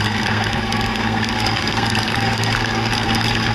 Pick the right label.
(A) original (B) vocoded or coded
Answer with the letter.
B